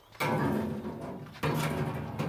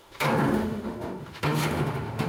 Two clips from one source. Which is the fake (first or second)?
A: second